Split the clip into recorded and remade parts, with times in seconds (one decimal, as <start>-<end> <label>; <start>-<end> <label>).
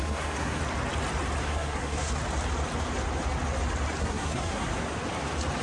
0.0-0.6 remade; 0.6-1.4 recorded; 1.4-2.1 remade; 2.1-4.0 recorded; 4.0-4.7 remade; 4.7-5.6 recorded